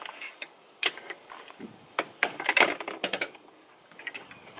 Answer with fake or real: fake